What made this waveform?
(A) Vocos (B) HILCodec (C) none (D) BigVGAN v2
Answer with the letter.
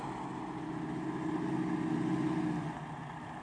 C